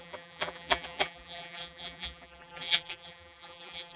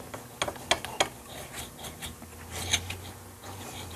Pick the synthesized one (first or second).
first